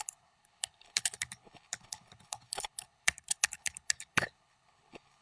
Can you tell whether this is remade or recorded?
remade